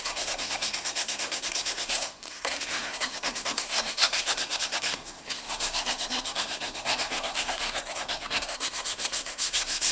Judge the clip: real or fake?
fake